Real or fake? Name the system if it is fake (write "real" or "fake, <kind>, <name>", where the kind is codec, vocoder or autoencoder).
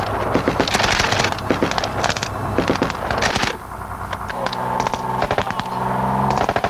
real